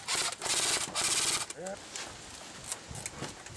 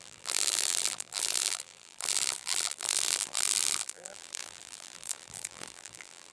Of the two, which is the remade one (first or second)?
second